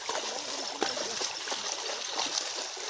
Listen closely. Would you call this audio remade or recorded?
recorded